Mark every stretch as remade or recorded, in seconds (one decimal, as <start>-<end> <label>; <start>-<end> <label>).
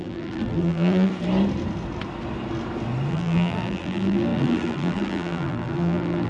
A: 0.0-1.1 remade; 1.1-3.1 recorded; 3.1-6.3 remade